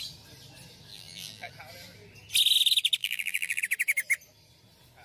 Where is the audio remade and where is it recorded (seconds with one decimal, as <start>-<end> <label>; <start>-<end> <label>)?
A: 0.0-0.9 recorded; 0.9-1.5 remade; 1.5-3.0 recorded; 3.0-3.6 remade; 3.6-5.0 recorded